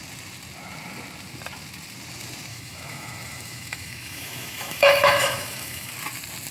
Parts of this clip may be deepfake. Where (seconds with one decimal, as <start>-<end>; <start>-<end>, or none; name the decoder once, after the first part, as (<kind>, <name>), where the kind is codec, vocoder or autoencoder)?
2.5-5.9 (autoencoder, DAC-VAE)